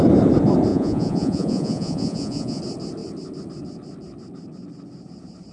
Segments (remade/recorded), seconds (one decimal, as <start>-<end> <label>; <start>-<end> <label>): 0.0-0.7 recorded; 0.7-2.6 remade; 2.6-5.5 recorded